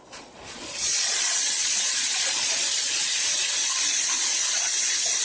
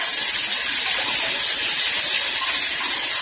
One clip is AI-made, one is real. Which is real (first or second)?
second